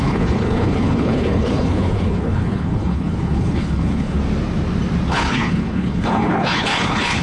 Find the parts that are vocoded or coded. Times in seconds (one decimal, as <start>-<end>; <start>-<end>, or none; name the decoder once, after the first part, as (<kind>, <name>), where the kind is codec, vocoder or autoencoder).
0.0-4.2 (codec, HILCodec); 5.1-7.2